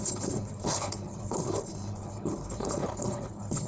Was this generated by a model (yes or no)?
yes